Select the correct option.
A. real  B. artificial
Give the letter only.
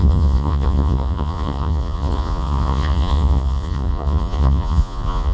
B